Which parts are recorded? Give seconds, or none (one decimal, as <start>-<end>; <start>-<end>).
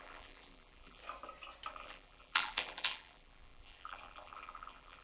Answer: 1.0-1.7